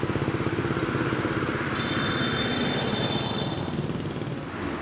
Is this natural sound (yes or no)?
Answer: yes